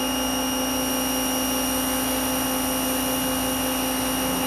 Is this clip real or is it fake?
real